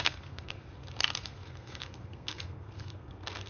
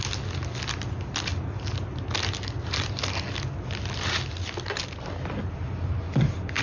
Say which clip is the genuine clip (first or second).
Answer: second